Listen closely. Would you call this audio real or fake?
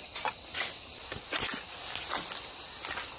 real